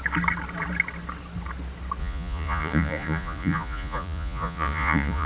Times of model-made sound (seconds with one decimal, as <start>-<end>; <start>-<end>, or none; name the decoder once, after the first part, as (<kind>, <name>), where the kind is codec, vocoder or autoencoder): 2.0-5.3 (vocoder, Vocos)